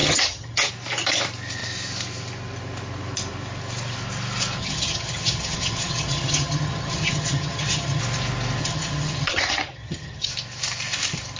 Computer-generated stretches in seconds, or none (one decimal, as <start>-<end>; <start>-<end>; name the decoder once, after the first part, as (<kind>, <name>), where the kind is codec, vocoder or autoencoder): 0.0-0.7 (vocoder, HiFi-GAN); 4.6-8.0; 8.6-10.3